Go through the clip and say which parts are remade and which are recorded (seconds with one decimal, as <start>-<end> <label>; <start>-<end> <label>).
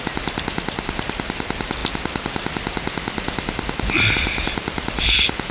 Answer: 0.0-5.5 recorded